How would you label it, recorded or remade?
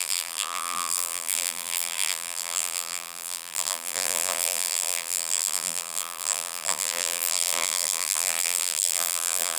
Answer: remade